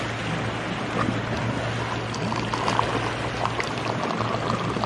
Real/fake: real